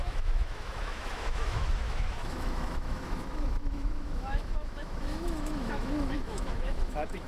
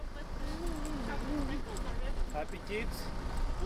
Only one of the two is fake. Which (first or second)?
first